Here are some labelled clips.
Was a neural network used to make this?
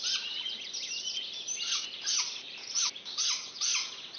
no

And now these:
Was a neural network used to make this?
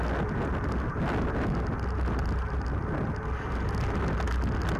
no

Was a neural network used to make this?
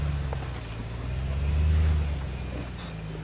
no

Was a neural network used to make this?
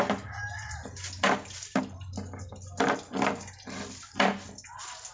no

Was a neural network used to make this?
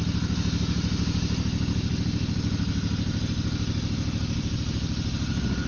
no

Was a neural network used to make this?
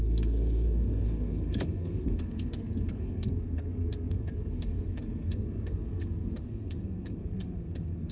yes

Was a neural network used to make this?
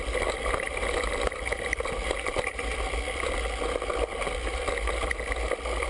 no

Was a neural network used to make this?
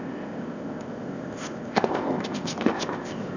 yes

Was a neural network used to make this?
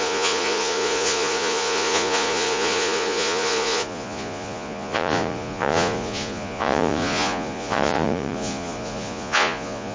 yes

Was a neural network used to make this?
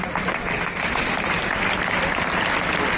no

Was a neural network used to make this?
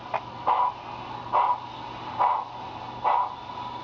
no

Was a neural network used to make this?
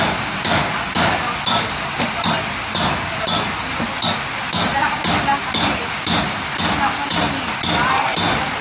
no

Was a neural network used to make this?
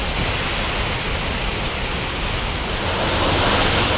no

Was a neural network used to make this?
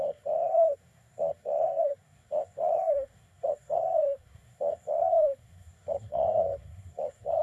yes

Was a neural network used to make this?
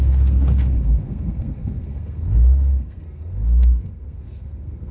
yes